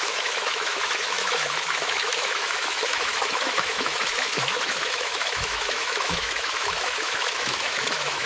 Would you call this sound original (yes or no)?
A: no